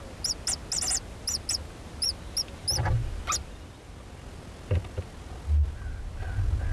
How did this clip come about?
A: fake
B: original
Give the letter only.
B